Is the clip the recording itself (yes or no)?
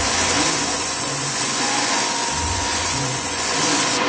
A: no